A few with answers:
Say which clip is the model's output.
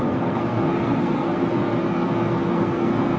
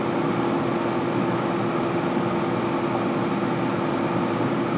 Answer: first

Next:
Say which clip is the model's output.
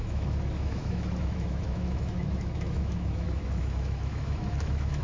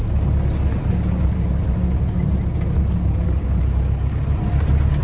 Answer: first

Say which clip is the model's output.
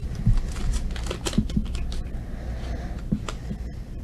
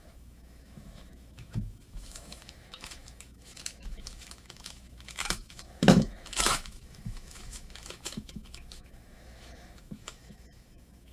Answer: second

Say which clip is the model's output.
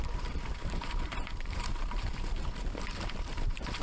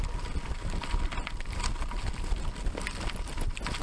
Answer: first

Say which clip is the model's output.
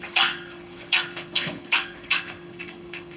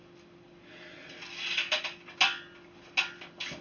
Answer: first